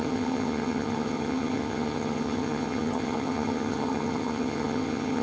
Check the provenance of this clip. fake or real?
fake